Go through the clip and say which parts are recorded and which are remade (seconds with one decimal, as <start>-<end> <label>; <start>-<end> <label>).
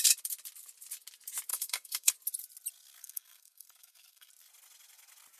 0.0-1.5 recorded; 1.5-2.1 remade; 2.1-3.0 recorded; 3.0-4.3 remade; 4.3-5.4 recorded